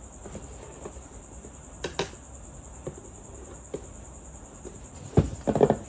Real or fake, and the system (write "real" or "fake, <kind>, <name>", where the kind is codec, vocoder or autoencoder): real